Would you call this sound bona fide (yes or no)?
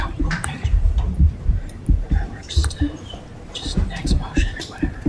no